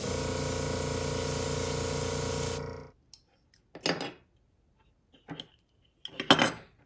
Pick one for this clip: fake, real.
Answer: real